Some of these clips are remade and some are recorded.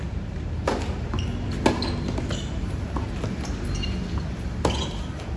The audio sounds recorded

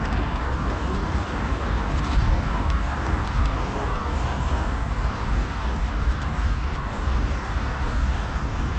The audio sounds remade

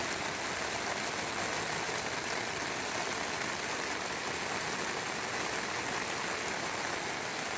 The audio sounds recorded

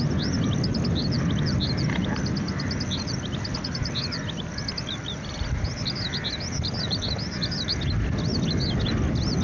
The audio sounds recorded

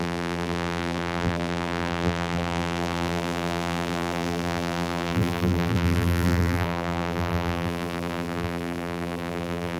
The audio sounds remade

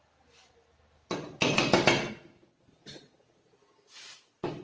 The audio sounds recorded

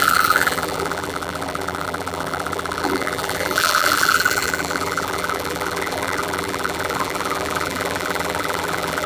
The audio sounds remade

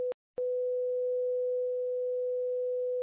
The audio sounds recorded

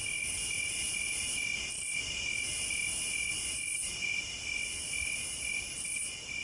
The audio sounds recorded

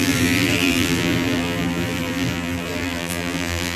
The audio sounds remade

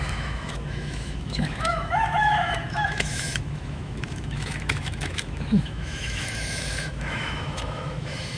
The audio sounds remade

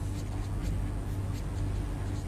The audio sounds recorded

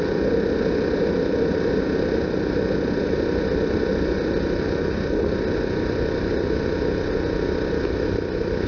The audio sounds recorded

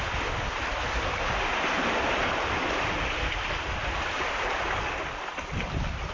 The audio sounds recorded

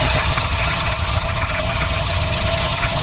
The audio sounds remade